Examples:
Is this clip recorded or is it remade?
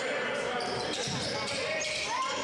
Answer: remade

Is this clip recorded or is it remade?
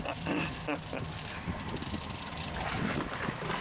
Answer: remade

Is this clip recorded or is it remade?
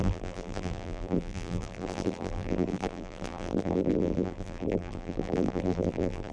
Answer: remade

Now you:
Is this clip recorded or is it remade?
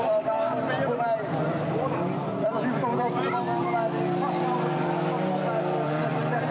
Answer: remade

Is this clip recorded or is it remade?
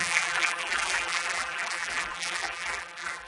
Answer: remade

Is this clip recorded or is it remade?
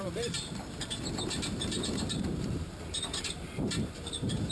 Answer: remade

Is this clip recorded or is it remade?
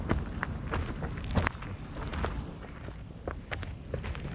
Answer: recorded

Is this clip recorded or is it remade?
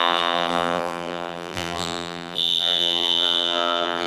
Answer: remade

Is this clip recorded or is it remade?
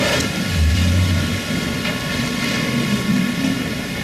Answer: recorded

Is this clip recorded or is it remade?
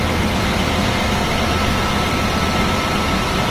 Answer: recorded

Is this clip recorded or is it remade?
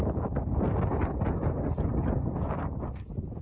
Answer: recorded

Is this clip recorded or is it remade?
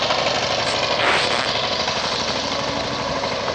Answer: remade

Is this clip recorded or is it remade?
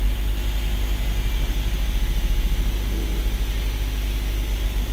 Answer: recorded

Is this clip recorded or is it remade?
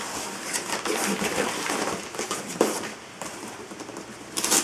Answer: recorded